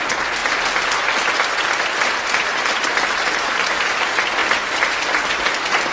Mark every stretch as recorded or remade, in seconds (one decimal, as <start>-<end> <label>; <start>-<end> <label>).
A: 0.0-5.9 recorded